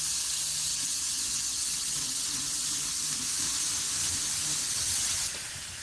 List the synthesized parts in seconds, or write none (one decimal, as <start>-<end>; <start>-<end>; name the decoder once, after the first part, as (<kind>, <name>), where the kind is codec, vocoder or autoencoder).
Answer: 0.7-2.4 (vocoder, WaveNeXt); 4.6-5.3

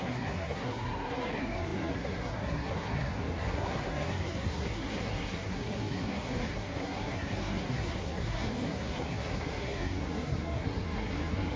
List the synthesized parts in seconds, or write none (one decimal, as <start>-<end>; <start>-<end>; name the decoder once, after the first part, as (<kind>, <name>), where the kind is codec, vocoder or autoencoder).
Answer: 0.0-11.6 (codec, SNAC)

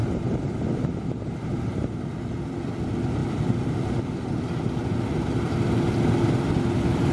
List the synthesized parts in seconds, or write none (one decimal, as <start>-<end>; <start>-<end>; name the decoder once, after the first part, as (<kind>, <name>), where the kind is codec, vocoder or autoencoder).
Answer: 0.0-2.0 (vocoder, BigVGAN v2); 3.2-4.0

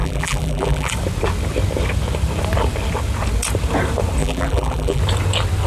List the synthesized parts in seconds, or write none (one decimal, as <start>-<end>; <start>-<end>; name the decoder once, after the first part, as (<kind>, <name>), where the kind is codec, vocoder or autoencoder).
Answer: 0.0-0.9 (vocoder, BigVGAN v2); 4.2-5.0